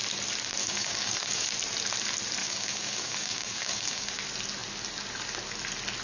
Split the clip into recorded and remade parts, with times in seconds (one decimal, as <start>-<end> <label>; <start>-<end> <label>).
0.0-0.6 recorded; 0.6-1.5 remade; 1.5-2.4 recorded; 2.4-4.1 remade; 4.1-6.0 recorded